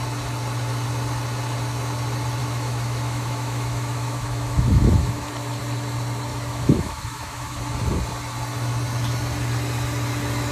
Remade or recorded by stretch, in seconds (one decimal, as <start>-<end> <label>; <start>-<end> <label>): 0.0-2.4 recorded; 2.4-5.3 remade; 5.3-6.3 recorded; 6.3-7.6 remade; 7.6-10.5 recorded